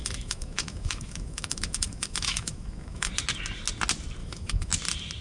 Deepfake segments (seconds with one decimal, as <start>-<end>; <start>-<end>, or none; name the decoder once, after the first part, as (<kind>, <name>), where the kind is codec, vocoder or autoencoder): 0.0-3.1 (autoencoder, DAC-VAE); 4.2-4.7